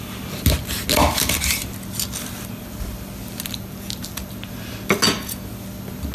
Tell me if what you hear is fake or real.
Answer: real